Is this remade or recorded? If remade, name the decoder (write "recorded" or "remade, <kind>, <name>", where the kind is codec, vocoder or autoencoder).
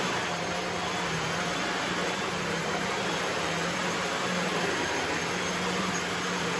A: remade, vocoder, BigVGAN v2